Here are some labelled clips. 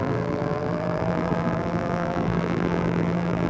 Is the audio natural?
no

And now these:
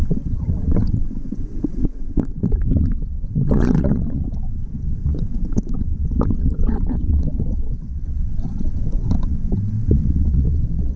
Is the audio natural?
no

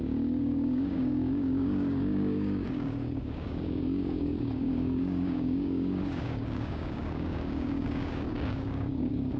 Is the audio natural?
no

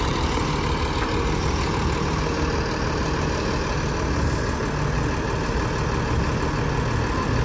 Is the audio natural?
yes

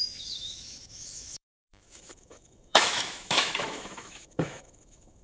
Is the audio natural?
no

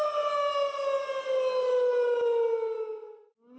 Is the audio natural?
yes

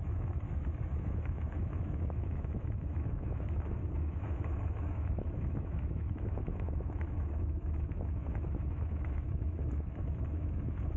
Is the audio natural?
no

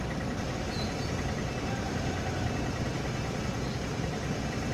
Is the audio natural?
yes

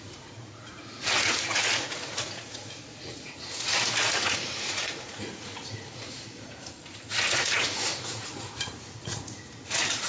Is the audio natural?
no